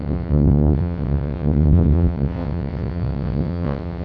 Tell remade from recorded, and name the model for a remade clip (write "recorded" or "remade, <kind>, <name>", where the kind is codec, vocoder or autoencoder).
remade, vocoder, WaveNeXt